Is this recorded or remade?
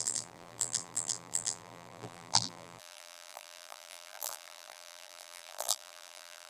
remade